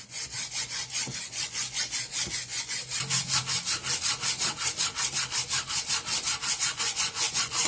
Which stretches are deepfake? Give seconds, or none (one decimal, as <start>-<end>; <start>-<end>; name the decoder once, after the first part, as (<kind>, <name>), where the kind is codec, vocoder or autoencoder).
0.0-2.8 (vocoder, Vocos); 6.6-7.7